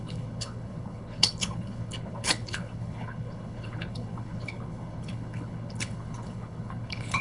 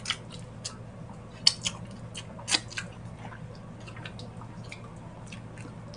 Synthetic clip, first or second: first